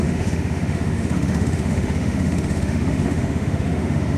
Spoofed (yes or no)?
yes